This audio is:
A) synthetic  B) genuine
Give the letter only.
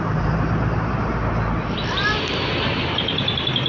B